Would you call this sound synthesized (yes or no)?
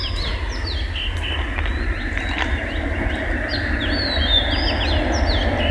no